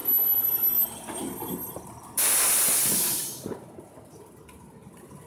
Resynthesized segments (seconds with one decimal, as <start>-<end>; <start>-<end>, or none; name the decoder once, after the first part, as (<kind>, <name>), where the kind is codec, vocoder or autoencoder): none

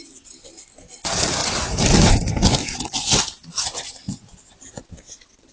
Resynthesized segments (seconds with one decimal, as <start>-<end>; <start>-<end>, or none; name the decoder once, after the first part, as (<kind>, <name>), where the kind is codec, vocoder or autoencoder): none